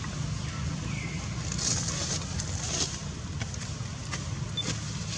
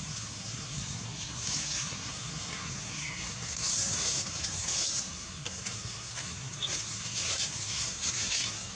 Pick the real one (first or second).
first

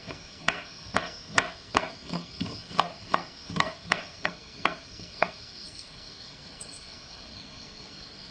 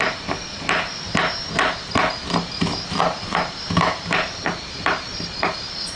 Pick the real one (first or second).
second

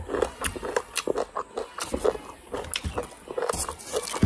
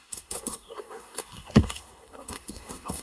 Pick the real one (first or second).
first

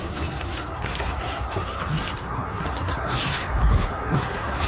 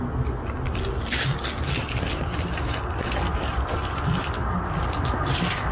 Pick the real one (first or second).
second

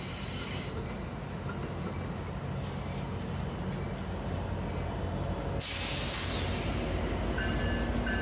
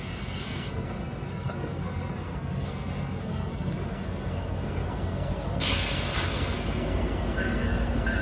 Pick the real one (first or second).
first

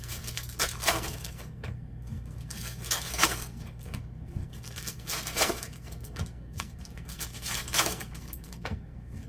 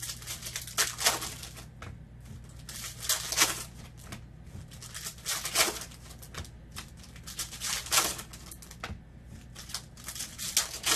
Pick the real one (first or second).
second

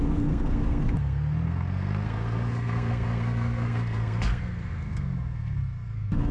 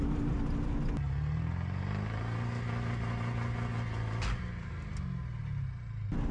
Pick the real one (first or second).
second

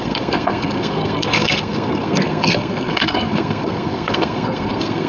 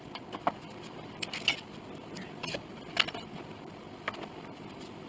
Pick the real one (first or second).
second